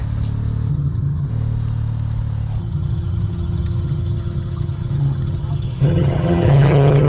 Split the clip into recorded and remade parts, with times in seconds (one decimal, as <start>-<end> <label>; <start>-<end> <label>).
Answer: 0.0-0.7 recorded; 0.7-1.3 remade; 1.3-2.6 recorded; 2.6-7.1 remade